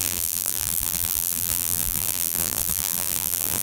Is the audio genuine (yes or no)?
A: no